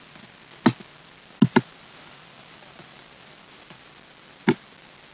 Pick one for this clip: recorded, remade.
recorded